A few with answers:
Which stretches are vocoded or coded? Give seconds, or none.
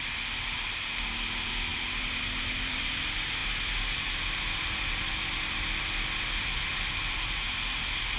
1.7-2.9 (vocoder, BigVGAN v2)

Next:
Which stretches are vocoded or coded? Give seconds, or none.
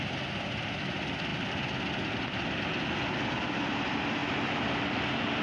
none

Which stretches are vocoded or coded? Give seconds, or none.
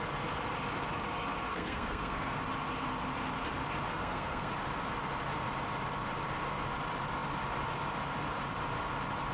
1.5-2.4 (codec, SNAC); 3.9-4.5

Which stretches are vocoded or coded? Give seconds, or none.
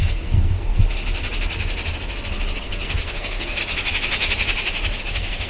0.0-0.8 (codec, SNAC); 2.6-3.6; 5.0-5.5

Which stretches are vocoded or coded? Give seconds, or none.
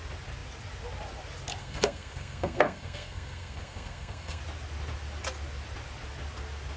1.6-4.4 (codec, SNAC)